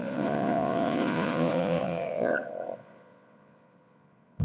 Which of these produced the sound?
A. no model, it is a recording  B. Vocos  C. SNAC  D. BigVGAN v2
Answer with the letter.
B